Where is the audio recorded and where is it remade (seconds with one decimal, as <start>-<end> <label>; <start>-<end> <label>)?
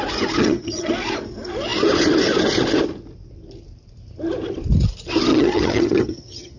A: 0.0-0.4 recorded; 0.4-0.9 remade; 0.9-5.3 recorded; 5.3-6.6 remade